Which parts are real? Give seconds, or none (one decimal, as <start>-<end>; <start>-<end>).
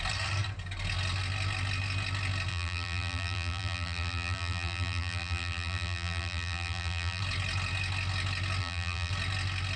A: 0.0-2.5; 7.2-8.6; 9.1-9.8